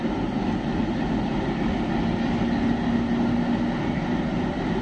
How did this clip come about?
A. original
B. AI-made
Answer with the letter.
A